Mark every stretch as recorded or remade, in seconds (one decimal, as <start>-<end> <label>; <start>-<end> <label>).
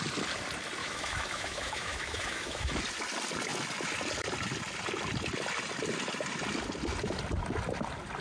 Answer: 0.0-0.8 recorded; 0.8-2.7 remade; 2.7-8.2 recorded